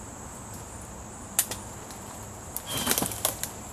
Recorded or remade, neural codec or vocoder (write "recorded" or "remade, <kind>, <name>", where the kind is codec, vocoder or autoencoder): recorded